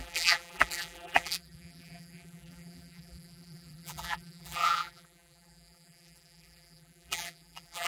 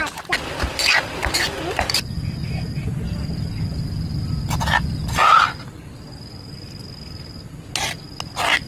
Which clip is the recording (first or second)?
second